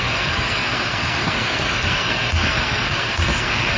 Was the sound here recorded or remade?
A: remade